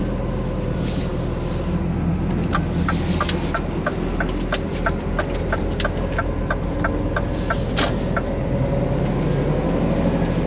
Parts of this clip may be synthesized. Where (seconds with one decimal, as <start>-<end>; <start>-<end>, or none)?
none